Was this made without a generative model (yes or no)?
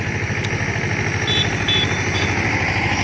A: yes